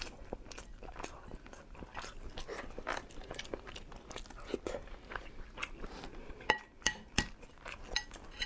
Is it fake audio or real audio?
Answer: real